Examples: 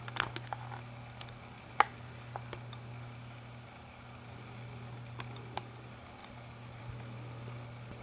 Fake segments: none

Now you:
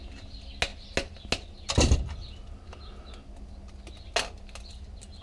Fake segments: none

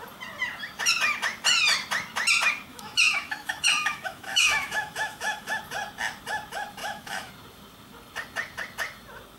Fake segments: 2.7-5.6 (autoencoder, DAC-VAE); 6.8-7.3

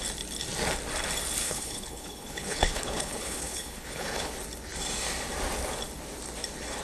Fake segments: 1.4-4.3 (codec, HILCodec)